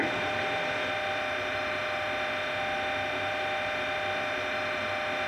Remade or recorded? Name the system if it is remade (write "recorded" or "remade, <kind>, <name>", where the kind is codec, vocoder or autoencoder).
recorded